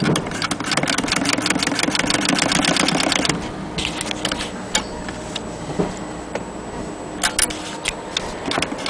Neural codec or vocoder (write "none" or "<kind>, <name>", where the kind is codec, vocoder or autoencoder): none